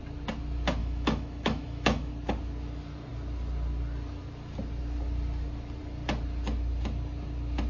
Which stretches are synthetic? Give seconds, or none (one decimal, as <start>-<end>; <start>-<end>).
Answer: 0.8-2.1